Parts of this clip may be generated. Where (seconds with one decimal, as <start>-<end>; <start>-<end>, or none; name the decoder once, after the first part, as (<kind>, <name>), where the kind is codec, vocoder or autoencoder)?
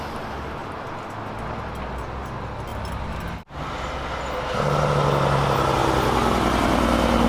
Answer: none